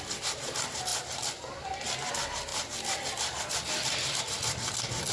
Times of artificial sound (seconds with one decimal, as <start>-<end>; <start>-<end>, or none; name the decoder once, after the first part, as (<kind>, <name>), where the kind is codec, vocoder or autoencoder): 0.9-2.1 (vocoder, BigVGAN v2); 2.5-4.2